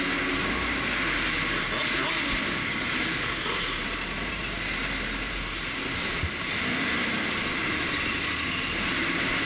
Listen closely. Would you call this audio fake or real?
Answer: real